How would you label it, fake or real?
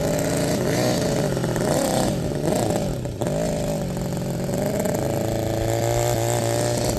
real